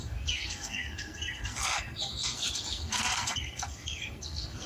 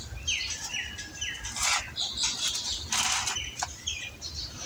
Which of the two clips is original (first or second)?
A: second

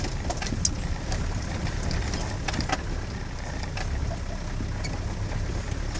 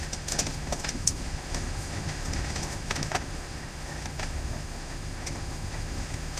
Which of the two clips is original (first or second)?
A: first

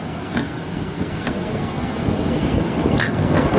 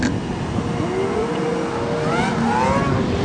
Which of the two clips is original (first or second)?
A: second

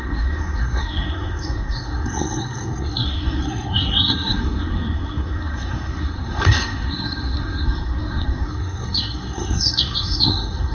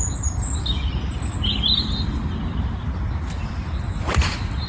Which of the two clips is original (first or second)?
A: second